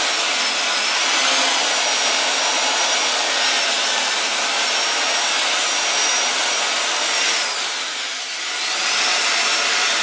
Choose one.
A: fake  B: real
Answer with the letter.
B